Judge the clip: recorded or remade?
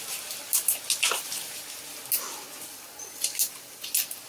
recorded